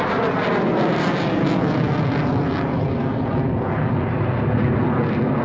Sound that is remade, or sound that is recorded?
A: recorded